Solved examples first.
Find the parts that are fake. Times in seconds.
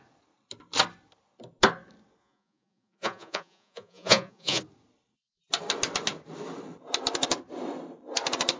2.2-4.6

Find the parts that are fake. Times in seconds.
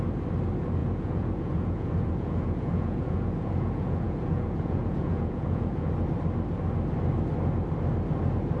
0.8-5.9